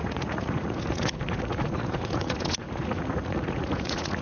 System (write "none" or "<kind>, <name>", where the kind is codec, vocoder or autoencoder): vocoder, Vocos